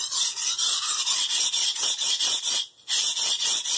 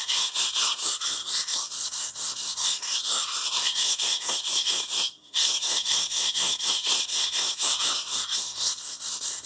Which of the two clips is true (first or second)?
first